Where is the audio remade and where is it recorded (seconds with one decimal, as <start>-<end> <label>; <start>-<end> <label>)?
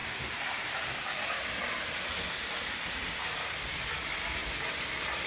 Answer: 0.0-5.3 recorded